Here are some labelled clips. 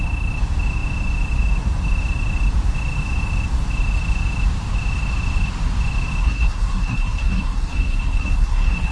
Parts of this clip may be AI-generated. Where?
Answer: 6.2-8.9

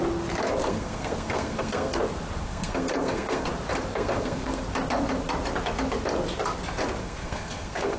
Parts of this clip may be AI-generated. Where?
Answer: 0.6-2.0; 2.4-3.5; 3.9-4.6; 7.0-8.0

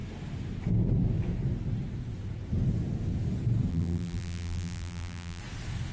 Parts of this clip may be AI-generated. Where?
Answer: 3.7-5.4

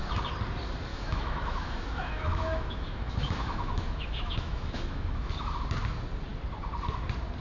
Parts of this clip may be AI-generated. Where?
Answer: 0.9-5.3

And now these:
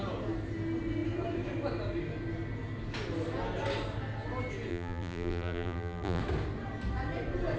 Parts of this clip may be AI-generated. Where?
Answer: 4.7-6.2